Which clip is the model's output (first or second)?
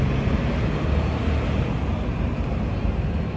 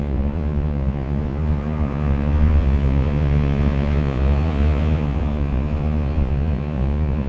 second